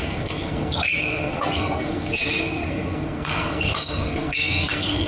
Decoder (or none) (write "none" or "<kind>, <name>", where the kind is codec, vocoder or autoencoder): codec, SNAC